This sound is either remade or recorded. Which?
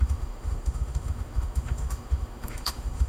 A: remade